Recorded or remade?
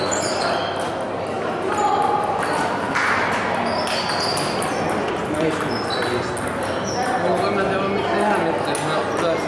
recorded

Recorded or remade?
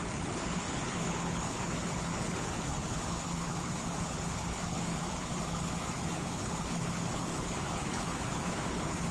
remade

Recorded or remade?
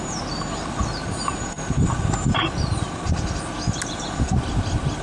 recorded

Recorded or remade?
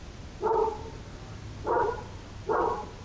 recorded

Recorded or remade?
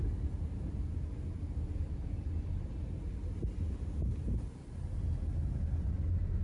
recorded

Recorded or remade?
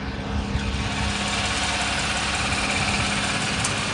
recorded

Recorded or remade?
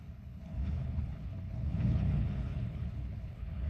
remade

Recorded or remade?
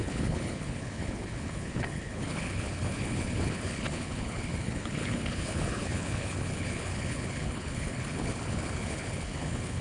remade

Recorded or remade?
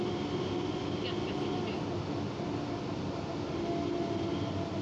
recorded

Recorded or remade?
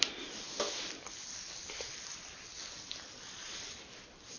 recorded